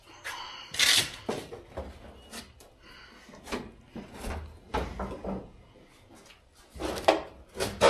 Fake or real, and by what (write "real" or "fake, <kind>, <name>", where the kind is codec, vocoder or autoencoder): real